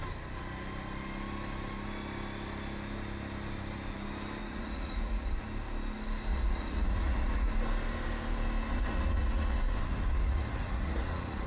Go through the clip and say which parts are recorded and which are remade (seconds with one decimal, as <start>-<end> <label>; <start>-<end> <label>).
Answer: 0.0-4.4 recorded; 4.4-5.4 remade; 5.4-6.3 recorded; 6.3-7.5 remade; 7.5-8.7 recorded; 8.7-11.5 remade